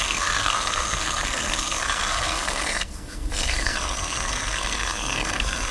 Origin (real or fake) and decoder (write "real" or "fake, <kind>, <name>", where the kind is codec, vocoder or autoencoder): fake, codec, SNAC